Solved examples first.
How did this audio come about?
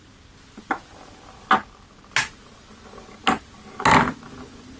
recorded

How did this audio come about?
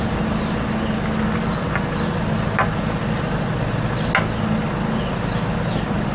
recorded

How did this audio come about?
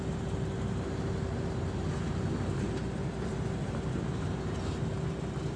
recorded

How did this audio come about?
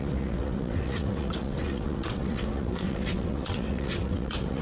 remade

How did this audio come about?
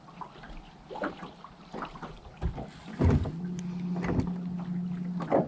recorded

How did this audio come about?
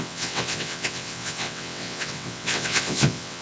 remade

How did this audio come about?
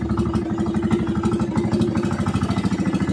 recorded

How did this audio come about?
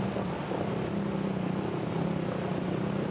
recorded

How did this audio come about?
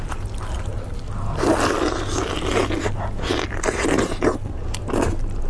recorded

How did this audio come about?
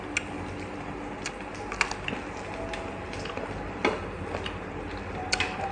recorded